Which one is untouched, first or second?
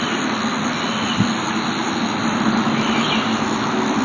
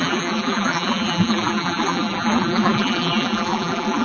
first